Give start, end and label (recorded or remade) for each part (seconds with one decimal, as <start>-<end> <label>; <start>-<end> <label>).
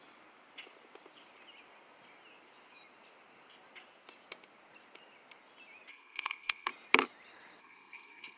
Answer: 0.0-5.9 recorded; 5.9-6.7 remade; 6.7-7.6 recorded; 7.6-8.4 remade